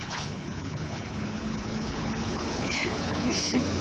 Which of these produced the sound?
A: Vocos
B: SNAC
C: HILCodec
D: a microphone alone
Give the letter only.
C